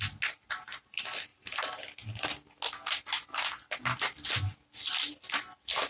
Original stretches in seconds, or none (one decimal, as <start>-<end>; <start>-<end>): 0.0-5.9